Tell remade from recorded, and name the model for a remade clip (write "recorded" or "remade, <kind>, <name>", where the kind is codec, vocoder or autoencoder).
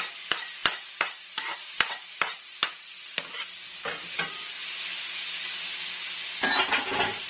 recorded